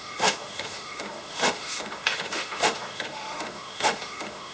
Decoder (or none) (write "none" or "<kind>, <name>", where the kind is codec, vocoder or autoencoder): autoencoder, DAC-VAE